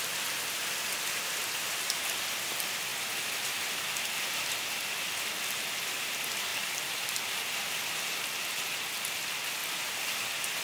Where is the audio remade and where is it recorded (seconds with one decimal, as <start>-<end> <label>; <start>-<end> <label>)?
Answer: 0.0-1.4 recorded; 1.4-2.5 remade; 2.5-2.9 recorded; 2.9-4.0 remade; 4.0-6.5 recorded; 6.5-7.7 remade; 7.7-9.6 recorded; 9.6-10.6 remade